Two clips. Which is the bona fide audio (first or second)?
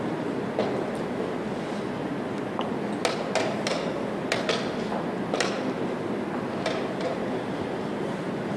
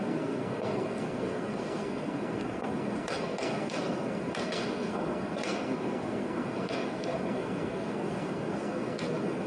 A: first